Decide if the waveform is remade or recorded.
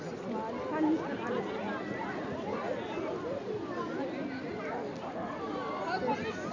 recorded